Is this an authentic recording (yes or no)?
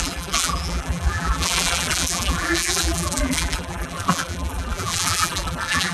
no